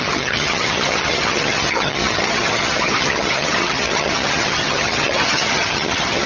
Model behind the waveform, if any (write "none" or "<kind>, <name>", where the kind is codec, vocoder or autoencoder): vocoder, HiFi-GAN